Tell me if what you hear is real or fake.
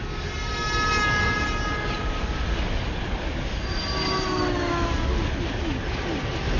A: real